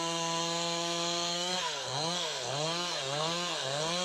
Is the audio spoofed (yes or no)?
yes